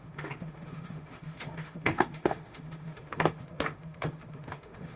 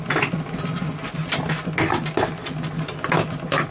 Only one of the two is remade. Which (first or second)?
first